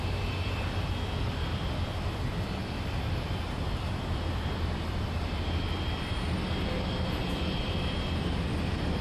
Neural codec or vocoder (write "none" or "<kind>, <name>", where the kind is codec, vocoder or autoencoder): vocoder, BigVGAN v2